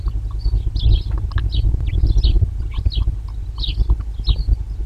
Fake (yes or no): no